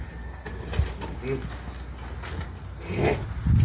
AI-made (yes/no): no